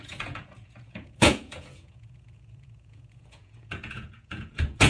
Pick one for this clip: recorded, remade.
remade